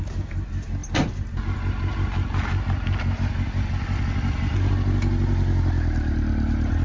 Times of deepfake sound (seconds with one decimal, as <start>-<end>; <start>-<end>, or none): none